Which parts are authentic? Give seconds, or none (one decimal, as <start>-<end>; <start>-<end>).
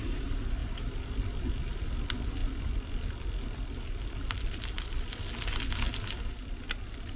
0.0-7.2